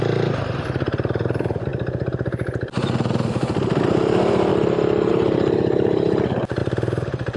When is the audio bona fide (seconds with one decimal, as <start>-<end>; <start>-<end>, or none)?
1.7-3.6; 4.5-5.1; 6.6-7.4